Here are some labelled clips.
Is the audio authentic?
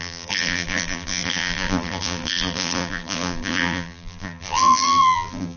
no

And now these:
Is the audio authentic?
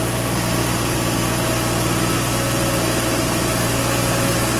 yes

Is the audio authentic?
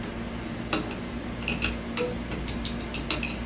yes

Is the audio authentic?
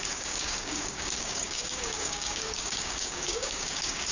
no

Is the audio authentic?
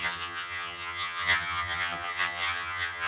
no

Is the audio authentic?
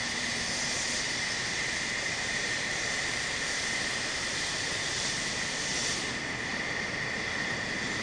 no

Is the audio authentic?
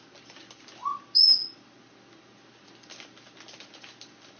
yes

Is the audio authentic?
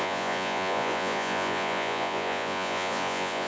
no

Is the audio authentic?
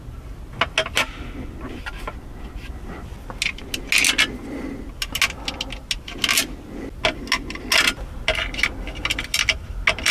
yes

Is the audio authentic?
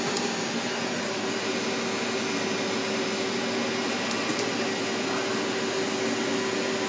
yes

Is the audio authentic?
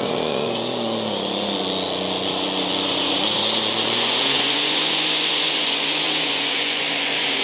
no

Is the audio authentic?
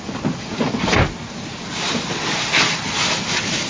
yes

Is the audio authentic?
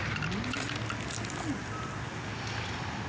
yes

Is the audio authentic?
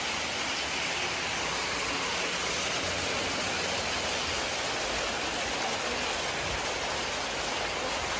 yes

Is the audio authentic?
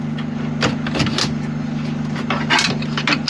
yes